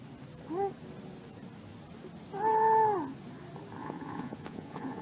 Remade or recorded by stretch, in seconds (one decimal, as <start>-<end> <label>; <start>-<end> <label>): 0.0-3.8 recorded; 3.8-5.0 remade